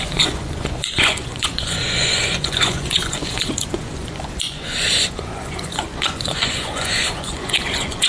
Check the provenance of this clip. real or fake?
fake